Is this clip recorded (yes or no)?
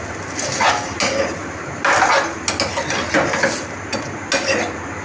yes